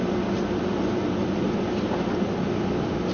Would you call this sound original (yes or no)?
yes